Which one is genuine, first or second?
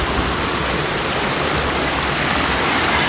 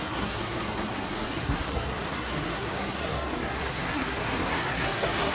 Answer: first